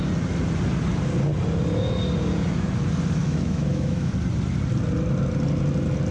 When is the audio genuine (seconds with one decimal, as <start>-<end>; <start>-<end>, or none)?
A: 0.0-3.2; 4.1-6.1